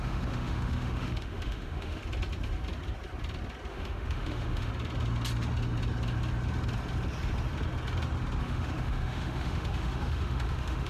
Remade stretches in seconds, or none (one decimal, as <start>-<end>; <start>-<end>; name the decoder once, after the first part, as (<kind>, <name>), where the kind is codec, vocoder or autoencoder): 0.0-2.0 (autoencoder, DAC-VAE); 3.7-4.7; 8.4-10.9